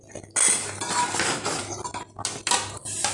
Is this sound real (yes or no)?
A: yes